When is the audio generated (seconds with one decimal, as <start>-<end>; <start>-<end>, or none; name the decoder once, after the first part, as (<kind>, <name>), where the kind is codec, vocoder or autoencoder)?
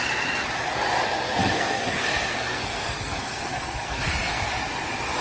1.4-4.5 (codec, SNAC)